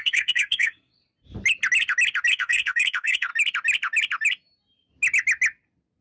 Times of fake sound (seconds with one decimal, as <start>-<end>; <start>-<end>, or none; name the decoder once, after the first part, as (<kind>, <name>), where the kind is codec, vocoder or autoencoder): 0.0-0.9 (codec, SNAC); 2.3-3.3